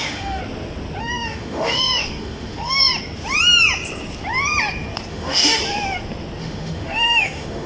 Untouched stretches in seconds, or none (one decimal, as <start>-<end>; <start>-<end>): 0.4-1.0; 2.9-5.1; 5.6-6.4